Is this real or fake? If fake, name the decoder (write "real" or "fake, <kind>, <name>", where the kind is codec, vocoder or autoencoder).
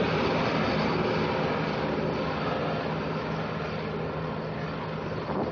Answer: real